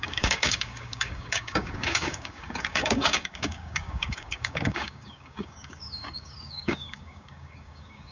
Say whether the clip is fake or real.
fake